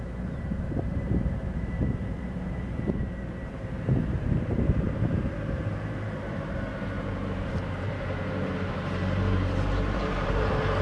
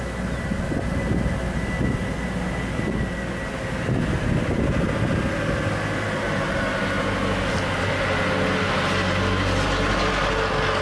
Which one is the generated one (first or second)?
first